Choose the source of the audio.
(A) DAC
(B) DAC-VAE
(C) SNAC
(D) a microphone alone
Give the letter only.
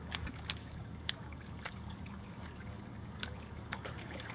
A